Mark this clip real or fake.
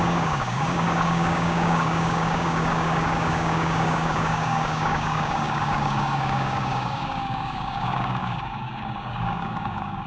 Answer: fake